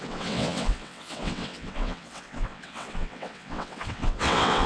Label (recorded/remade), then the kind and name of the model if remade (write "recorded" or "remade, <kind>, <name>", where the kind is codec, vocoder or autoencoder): remade, vocoder, WaveNeXt